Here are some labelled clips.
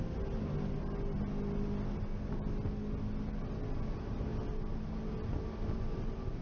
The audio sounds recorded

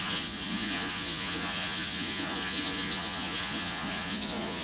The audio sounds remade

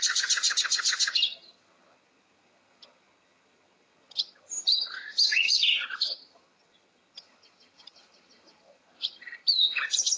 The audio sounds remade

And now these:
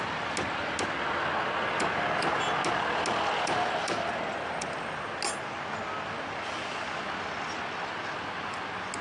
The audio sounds recorded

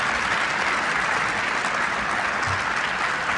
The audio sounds recorded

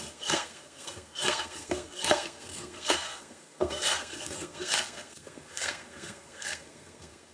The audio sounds remade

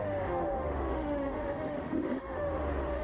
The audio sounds remade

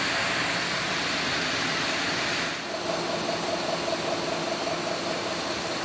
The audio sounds recorded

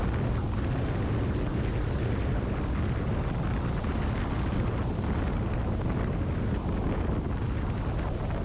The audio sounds recorded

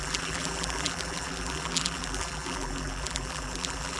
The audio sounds remade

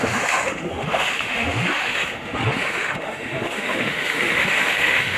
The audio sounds remade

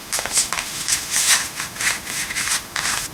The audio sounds remade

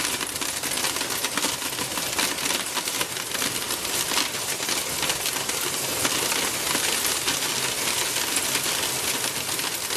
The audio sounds recorded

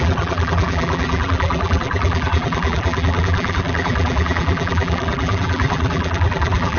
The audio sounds remade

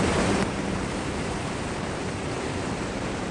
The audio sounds remade